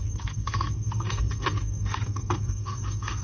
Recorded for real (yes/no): no